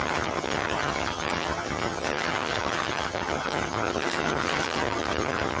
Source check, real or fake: fake